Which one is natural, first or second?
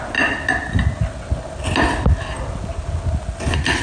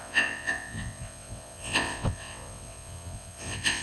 first